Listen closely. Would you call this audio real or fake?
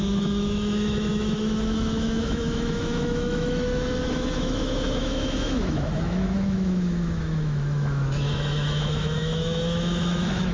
fake